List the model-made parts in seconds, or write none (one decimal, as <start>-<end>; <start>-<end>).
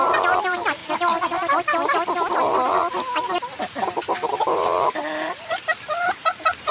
0.0-0.8; 4.3-6.7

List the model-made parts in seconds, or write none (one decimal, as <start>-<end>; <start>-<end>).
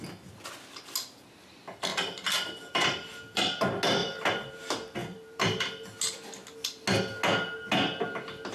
1.9-3.4; 4.0-4.6; 5.0-5.7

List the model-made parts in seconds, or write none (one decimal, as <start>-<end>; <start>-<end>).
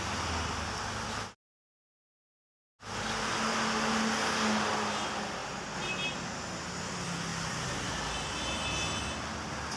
none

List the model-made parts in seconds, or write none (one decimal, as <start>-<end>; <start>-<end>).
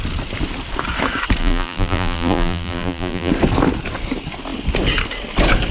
1.4-3.3